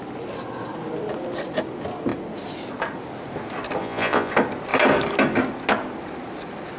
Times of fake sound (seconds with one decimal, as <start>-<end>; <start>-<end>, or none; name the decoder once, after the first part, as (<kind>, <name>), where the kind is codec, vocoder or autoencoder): 3.8-4.3 (vocoder, Vocos)